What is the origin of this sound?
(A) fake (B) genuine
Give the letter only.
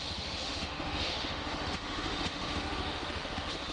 A